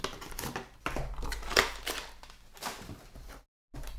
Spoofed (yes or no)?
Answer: no